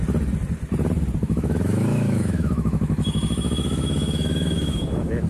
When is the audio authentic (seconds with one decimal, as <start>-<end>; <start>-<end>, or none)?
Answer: 0.0-1.2

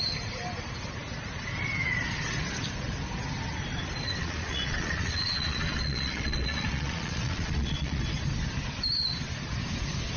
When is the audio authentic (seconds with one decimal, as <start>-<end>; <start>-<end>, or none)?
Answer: 0.0-4.2; 8.0-10.2

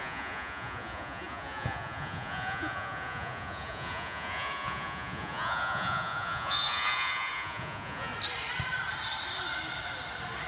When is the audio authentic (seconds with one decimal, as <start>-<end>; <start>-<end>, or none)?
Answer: 8.1-10.5

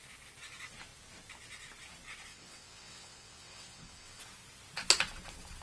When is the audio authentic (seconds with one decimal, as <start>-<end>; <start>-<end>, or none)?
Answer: 0.0-2.3; 4.2-5.6

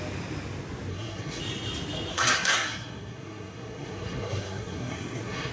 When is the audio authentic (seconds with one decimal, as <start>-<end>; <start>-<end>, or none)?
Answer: 0.0-0.9; 1.4-2.1

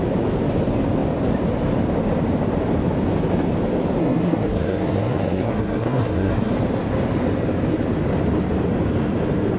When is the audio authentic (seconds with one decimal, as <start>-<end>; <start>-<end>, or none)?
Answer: 0.0-4.0; 6.5-9.6

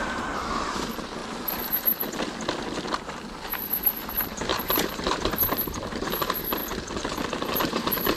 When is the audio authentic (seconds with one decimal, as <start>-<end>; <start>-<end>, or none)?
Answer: 1.2-4.1; 6.6-7.4